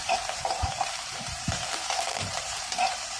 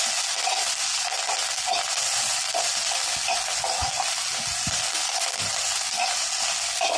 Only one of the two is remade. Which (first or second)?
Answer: first